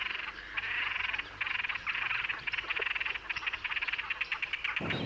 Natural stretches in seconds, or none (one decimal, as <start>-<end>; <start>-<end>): 0.0-5.1